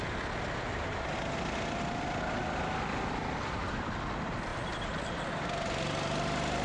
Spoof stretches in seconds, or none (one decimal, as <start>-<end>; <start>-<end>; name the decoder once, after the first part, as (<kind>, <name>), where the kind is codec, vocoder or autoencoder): none